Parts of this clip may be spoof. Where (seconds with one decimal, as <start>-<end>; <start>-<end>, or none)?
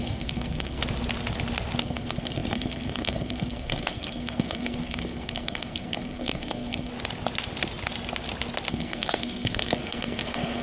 0.0-0.8; 1.8-6.9; 8.7-10.6